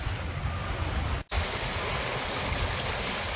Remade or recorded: recorded